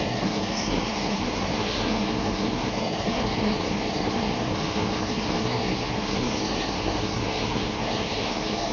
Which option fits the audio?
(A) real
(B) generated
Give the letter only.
B